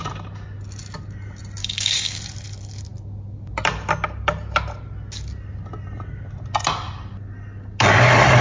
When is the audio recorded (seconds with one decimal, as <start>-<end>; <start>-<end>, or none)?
0.0-1.6; 2.2-8.4